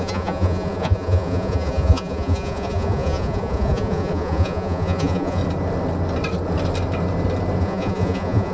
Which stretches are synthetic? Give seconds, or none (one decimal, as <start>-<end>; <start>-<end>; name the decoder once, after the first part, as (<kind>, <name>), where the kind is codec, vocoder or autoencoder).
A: 0.0-5.4 (vocoder, Vocos); 7.6-8.5